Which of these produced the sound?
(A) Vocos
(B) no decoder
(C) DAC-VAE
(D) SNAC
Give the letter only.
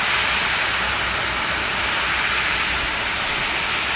B